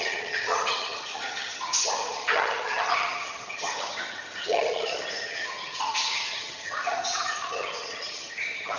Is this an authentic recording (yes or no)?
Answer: no